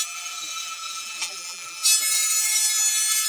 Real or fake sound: fake